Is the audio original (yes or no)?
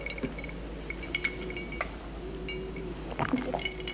yes